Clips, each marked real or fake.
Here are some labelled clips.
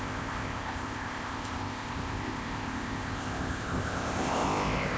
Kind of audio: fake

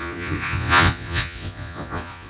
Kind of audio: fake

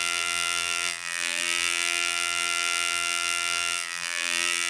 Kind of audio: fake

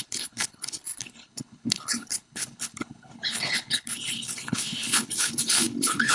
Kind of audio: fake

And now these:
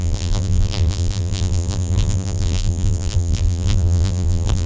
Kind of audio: fake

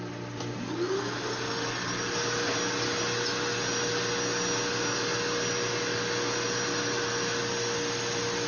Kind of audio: real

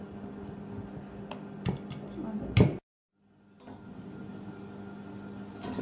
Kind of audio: real